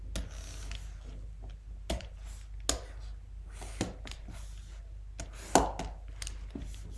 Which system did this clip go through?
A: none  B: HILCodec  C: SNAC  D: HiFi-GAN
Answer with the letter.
A